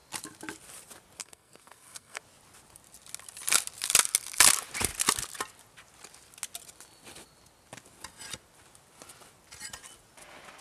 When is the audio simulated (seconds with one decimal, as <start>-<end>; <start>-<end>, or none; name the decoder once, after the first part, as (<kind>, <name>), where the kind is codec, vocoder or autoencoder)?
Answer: 1.2-2.2 (codec, SNAC)